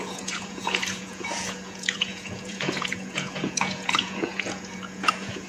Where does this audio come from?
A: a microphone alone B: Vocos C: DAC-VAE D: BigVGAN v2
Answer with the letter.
B